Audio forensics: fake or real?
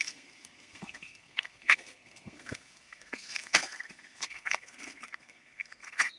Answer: fake